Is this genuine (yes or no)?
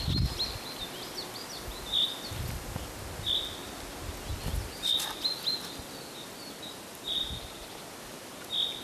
yes